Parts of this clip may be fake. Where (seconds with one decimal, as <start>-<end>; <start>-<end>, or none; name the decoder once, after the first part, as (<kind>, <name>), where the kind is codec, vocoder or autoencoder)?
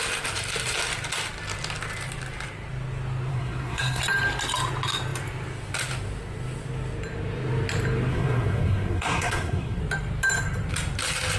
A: 3.3-4.0 (codec, SNAC); 8.1-9.8